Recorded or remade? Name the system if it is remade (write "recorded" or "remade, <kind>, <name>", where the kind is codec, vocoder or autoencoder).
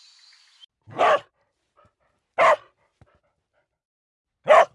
recorded